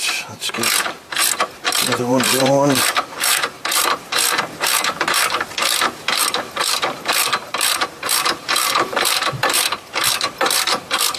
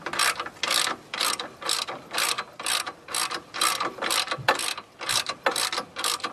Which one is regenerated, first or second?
first